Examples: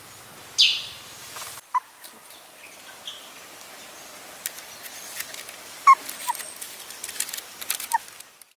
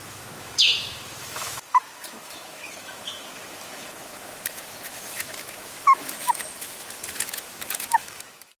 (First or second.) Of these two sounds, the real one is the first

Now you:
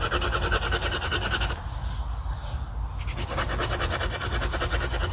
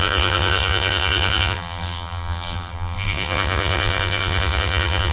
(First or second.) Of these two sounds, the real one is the first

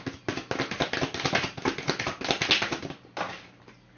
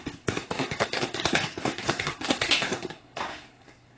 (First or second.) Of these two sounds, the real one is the first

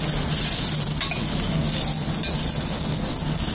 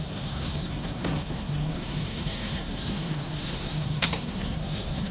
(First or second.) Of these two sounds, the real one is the first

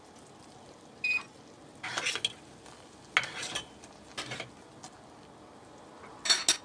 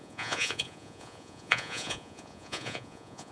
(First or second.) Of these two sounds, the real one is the first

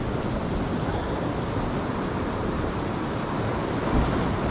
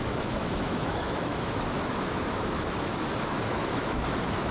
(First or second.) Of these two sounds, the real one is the first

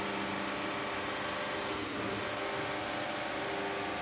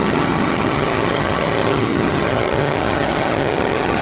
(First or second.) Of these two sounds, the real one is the first